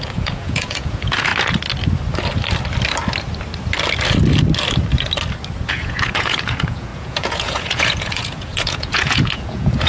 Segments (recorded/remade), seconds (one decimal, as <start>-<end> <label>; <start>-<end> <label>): 0.0-1.3 remade; 1.3-5.7 recorded; 5.7-9.9 remade